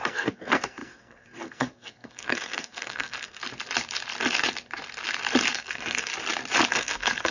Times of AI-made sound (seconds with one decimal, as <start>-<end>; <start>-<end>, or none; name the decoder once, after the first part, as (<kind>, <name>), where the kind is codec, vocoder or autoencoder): 0.0-3.4 (codec, SNAC); 5.5-6.1; 6.7-7.3